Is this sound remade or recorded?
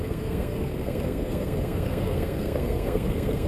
remade